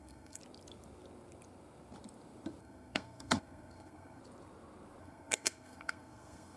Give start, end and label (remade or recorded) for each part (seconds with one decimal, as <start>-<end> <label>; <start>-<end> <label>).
0.0-0.4 remade; 0.4-2.6 recorded; 2.6-4.2 remade; 4.2-5.0 recorded; 5.0-6.6 remade